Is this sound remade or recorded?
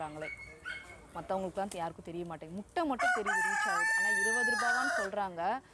recorded